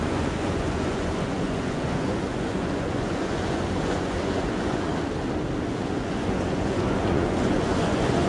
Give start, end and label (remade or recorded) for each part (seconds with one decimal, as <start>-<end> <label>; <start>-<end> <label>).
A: 0.0-4.9 remade; 4.9-5.7 recorded; 5.7-8.3 remade